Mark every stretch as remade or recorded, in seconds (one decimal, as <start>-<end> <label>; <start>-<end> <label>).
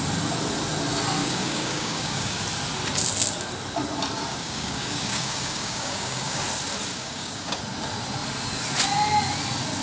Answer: 0.0-1.2 recorded; 1.2-2.4 remade; 2.4-4.3 recorded; 4.3-6.4 remade; 6.4-6.9 recorded; 6.9-7.6 remade; 7.6-9.8 recorded